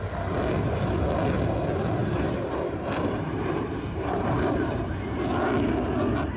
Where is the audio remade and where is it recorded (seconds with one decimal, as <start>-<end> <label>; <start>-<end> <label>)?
0.0-2.0 recorded; 2.0-5.2 remade; 5.2-6.4 recorded

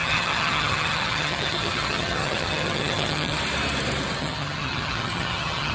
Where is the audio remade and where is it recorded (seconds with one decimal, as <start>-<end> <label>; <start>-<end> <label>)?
0.0-3.4 remade; 3.4-4.2 recorded; 4.2-5.7 remade

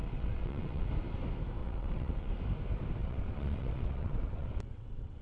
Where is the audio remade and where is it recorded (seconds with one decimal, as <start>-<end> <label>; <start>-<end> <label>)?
0.0-0.9 remade; 0.9-1.6 recorded; 1.6-2.3 remade; 2.3-3.0 recorded; 3.0-5.2 remade